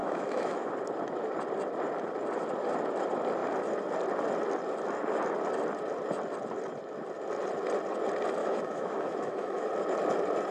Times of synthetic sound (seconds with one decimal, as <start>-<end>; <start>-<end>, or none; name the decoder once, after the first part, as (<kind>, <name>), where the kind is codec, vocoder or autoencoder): 0.0-0.7 (autoencoder, DAC-VAE); 8.4-9.7